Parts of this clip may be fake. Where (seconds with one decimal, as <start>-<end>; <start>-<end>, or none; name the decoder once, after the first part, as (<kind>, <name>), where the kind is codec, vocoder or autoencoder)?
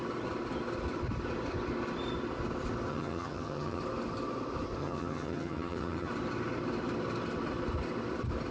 2.9-3.8 (vocoder, HiFi-GAN); 4.8-6.1